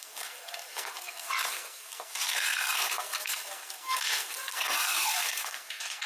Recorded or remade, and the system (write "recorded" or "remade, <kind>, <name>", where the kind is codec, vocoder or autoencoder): remade, codec, SNAC